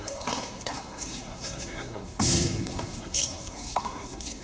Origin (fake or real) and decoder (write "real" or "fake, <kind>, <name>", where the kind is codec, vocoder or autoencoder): fake, codec, SNAC